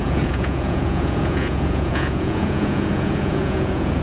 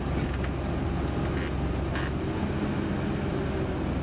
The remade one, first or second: first